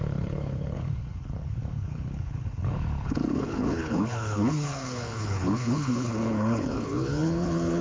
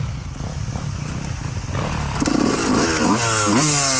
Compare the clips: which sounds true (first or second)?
second